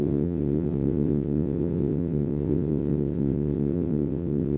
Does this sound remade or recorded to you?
remade